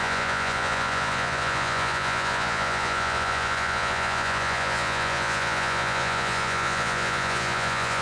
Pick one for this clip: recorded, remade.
remade